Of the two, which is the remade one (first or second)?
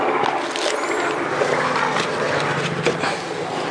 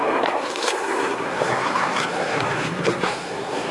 second